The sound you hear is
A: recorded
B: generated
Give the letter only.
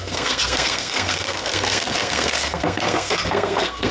B